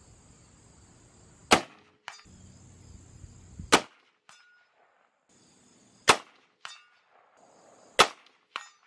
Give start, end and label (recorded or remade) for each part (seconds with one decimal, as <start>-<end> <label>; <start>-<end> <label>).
0.0-8.9 recorded